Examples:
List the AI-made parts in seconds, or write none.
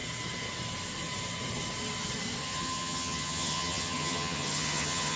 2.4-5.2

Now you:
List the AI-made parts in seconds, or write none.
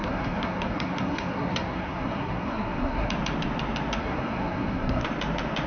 0.0-3.1; 4.0-5.0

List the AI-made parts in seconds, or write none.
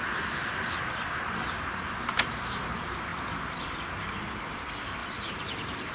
none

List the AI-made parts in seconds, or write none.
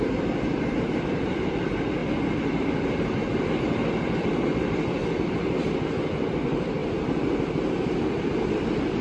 0.0-2.0; 2.6-6.8; 8.2-9.0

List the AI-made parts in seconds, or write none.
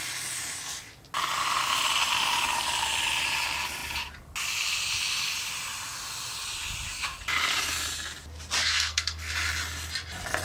8.6-9.3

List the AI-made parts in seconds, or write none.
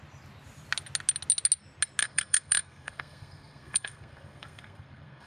2.0-5.3